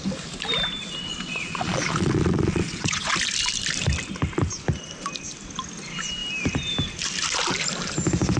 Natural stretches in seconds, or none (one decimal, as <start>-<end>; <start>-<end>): 0.0-1.1; 3.1-8.4